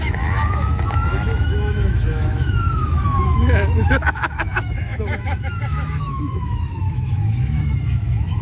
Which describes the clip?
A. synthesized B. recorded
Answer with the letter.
A